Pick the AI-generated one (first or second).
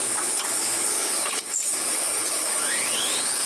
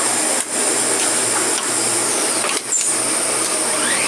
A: first